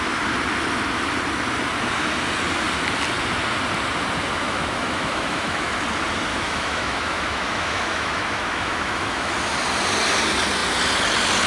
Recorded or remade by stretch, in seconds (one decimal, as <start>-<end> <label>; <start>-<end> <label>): 0.0-4.4 recorded; 4.4-5.7 remade; 5.7-6.3 recorded; 6.3-9.3 remade; 9.3-11.5 recorded

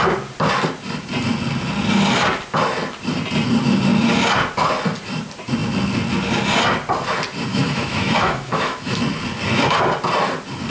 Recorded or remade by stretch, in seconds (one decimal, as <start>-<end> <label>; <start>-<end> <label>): 0.0-7.5 recorded; 7.5-9.0 remade; 9.0-10.7 recorded

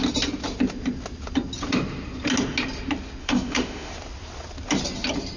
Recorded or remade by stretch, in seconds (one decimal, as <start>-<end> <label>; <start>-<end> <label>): 0.0-3.2 recorded; 3.2-3.9 remade; 3.9-5.4 recorded

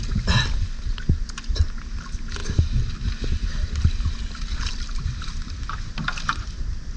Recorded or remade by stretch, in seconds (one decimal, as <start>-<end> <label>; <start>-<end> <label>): 0.0-7.0 recorded

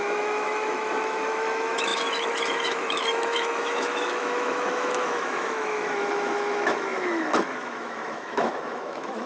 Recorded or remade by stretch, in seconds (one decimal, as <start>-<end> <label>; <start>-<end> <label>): 0.0-9.3 remade

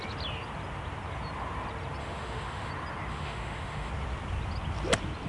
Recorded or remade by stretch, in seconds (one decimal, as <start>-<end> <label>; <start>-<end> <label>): 0.0-2.0 recorded; 2.0-2.7 remade; 2.7-3.1 recorded; 3.1-3.9 remade; 3.9-5.3 recorded